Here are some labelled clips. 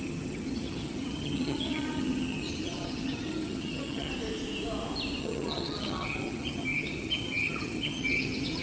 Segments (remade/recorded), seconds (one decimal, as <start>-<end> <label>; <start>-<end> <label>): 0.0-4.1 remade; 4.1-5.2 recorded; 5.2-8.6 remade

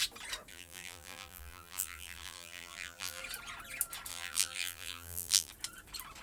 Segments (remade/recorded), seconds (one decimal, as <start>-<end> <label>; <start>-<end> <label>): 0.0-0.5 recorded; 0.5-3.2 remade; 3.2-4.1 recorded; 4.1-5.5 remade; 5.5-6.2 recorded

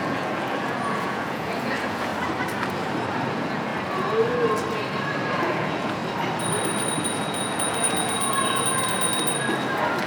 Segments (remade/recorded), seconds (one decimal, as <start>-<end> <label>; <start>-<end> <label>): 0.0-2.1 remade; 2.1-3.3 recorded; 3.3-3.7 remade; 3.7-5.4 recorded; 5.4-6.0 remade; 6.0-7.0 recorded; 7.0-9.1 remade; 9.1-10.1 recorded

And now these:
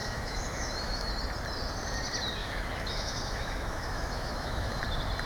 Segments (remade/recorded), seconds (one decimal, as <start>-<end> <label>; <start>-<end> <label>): 0.0-1.1 remade; 1.1-2.4 recorded; 2.4-4.8 remade; 4.8-5.3 recorded